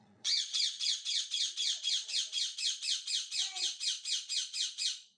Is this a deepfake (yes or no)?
yes